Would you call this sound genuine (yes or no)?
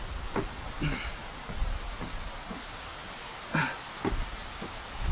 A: yes